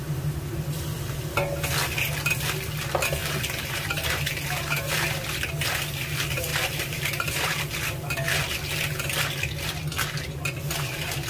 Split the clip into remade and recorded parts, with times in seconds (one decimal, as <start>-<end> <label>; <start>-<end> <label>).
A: 0.0-3.2 recorded; 3.2-4.9 remade; 4.9-6.5 recorded; 6.5-7.6 remade; 7.6-11.3 recorded